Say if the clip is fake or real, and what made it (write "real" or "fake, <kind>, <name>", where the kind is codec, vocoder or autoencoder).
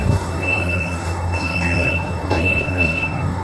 fake, codec, SNAC